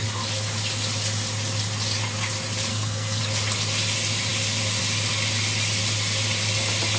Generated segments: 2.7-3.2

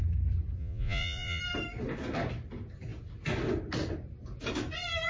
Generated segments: 0.6-1.4

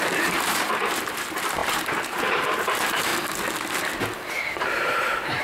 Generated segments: 0.0-3.1; 4.3-5.4

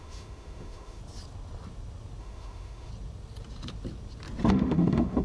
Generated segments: 0.0-1.0; 2.2-2.9; 4.5-5.2

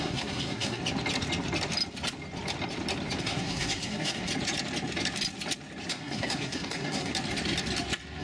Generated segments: 0.0-0.8; 3.2-4.3; 5.9-7.1

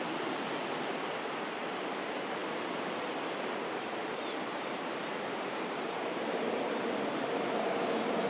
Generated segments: none